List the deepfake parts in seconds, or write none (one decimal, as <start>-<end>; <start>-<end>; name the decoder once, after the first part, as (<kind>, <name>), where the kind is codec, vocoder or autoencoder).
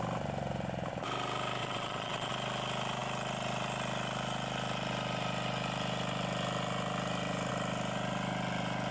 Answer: 1.6-2.3 (vocoder, WaveNeXt)